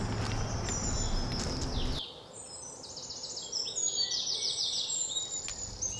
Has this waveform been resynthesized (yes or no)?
no